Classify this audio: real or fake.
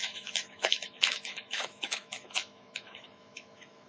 fake